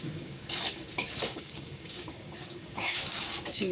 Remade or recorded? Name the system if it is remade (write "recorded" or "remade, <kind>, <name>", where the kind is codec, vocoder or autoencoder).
remade, codec, DAC